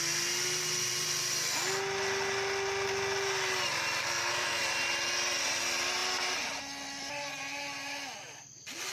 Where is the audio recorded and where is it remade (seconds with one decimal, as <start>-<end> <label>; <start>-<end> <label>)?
0.0-4.0 recorded; 4.0-4.6 remade; 4.6-8.9 recorded